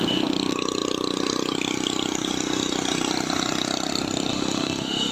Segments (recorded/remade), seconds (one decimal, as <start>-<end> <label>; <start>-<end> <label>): 0.0-4.3 recorded; 4.3-5.1 remade